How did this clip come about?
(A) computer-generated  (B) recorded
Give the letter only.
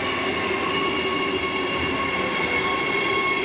B